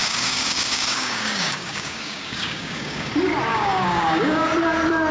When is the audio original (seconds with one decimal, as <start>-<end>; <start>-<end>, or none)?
3.1-3.5; 4.5-5.1